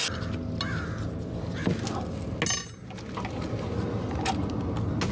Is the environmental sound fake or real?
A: real